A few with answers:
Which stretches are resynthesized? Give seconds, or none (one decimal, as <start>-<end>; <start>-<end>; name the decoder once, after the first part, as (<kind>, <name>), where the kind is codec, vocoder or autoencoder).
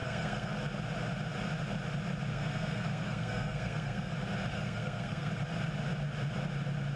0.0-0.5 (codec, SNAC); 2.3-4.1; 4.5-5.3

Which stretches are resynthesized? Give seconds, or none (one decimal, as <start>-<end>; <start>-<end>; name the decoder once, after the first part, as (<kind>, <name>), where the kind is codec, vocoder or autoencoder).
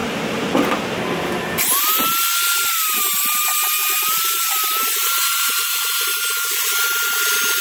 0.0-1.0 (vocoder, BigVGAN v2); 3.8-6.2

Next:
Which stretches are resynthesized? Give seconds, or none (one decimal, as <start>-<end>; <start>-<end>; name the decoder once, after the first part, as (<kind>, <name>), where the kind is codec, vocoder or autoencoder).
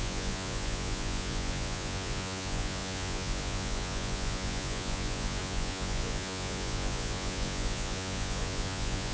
0.0-9.1 (vocoder, Vocos)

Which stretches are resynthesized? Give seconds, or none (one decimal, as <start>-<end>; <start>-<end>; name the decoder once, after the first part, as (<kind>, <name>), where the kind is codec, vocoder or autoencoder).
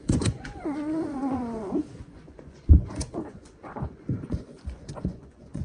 0.0-5.6 (vocoder, Vocos)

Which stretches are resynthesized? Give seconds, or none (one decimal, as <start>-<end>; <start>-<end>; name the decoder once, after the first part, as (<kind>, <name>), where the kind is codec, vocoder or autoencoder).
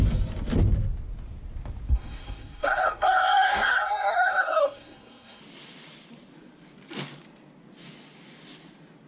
1.9-5.4 (codec, SNAC)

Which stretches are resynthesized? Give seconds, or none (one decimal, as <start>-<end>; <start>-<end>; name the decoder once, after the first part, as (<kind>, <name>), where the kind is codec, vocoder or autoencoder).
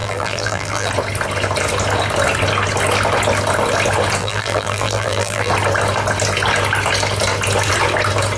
0.0-0.9 (vocoder, BigVGAN v2); 4.2-5.5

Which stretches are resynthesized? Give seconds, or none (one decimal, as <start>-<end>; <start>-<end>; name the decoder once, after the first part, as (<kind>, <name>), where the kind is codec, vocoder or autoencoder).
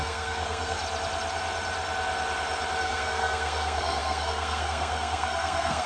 0.0-0.8 (codec, SNAC); 2.8-5.9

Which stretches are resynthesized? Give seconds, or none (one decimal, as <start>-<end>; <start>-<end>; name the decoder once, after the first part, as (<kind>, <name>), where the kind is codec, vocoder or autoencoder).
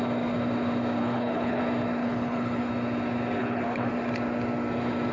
1.0-1.6 (codec, HILCodec); 2.0-2.7; 3.4-3.9